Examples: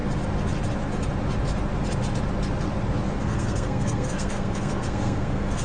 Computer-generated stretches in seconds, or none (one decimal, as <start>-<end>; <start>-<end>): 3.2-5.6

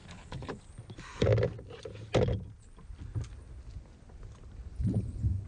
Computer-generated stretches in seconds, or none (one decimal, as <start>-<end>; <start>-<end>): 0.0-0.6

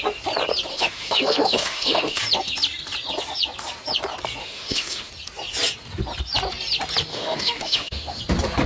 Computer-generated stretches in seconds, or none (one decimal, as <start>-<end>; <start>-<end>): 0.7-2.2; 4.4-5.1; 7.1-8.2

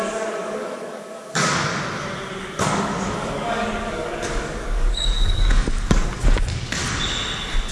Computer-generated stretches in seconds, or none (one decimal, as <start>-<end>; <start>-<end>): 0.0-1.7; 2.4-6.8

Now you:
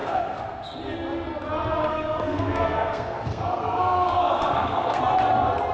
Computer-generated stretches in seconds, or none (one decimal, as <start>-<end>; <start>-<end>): 0.0-0.8; 1.8-5.0

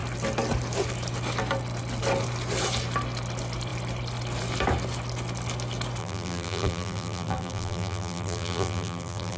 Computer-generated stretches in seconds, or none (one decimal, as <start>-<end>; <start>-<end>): 6.0-9.4